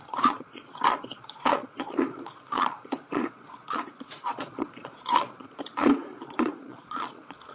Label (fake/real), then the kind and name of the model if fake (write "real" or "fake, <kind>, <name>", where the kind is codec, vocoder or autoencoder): fake, vocoder, Vocos